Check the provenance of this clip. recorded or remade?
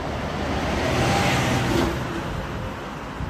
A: recorded